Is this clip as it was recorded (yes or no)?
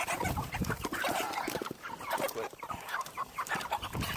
no